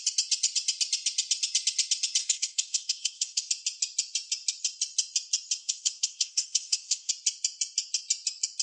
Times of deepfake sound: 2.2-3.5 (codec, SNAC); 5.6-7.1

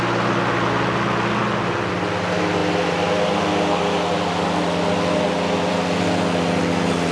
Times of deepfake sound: none

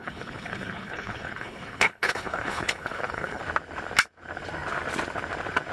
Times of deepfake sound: 0.0-3.4 (codec, HILCodec)

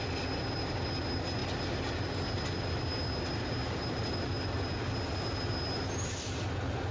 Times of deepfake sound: none

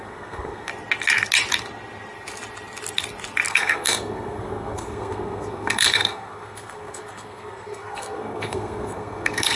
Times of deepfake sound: 0.0-0.7 (codec, SNAC); 3.5-9.6

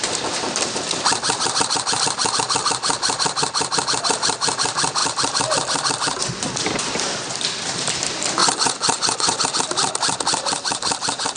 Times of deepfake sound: 8.4-9.4 (vocoder, Vocos)